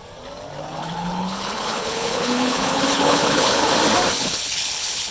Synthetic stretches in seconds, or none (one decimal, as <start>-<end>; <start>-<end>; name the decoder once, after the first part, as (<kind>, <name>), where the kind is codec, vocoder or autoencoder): 0.8-3.7 (codec, HILCodec); 4.2-5.1